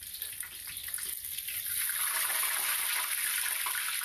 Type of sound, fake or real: real